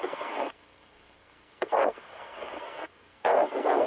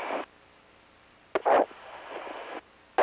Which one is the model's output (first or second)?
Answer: first